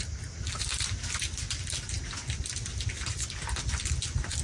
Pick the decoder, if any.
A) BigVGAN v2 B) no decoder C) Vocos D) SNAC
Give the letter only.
B